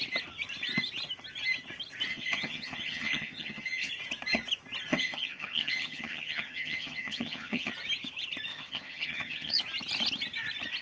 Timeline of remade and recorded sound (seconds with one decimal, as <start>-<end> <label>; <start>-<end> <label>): 0.0-2.1 recorded; 2.1-3.9 remade; 3.9-4.9 recorded; 4.9-7.7 remade; 7.7-8.5 recorded; 8.5-9.6 remade; 9.6-10.8 recorded

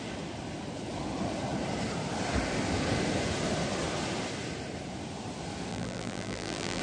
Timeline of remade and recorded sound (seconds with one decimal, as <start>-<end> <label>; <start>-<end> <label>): 0.0-5.7 recorded; 5.7-6.8 remade